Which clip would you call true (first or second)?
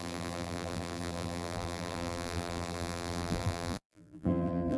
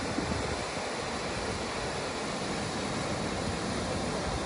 second